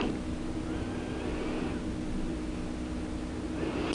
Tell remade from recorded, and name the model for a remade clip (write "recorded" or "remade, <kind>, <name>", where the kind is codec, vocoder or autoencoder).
recorded